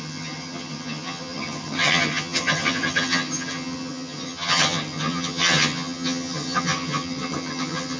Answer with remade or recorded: remade